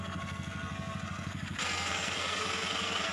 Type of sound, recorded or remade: remade